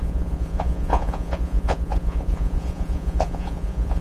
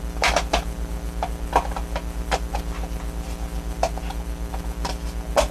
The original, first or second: second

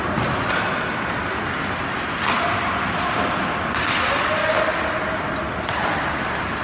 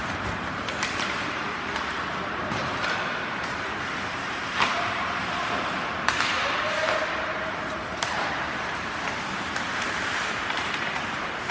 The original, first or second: first